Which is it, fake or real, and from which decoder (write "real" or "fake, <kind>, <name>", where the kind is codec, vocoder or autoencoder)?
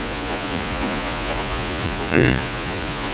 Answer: fake, vocoder, Vocos